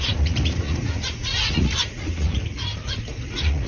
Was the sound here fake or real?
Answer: fake